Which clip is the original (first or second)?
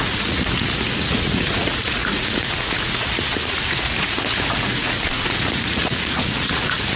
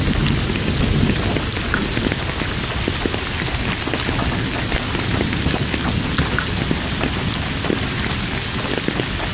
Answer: second